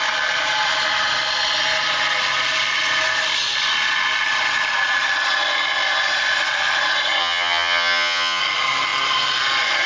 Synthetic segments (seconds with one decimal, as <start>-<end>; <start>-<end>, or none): 7.2-8.4